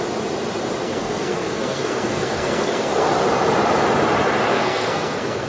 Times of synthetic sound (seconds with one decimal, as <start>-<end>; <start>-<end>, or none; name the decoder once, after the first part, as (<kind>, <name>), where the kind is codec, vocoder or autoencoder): 0.8-3.1 (codec, SNAC); 4.5-5.5